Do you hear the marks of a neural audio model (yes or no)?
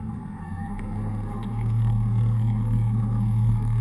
yes